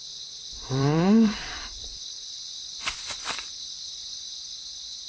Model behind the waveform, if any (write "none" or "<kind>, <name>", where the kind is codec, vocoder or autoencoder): vocoder, BigVGAN v2